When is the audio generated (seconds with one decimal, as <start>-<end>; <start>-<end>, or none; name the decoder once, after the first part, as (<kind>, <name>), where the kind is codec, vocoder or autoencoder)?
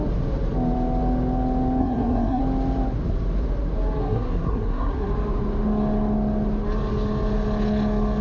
1.8-2.4 (codec, SNAC); 4.0-5.1